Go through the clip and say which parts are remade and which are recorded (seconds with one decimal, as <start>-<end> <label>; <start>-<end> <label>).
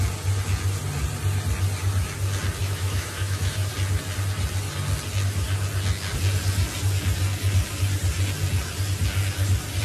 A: 0.0-2.6 recorded; 2.6-3.7 remade; 3.7-9.8 recorded